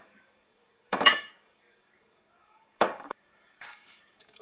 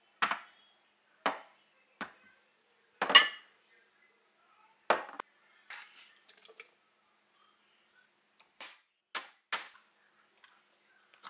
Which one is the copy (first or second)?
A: first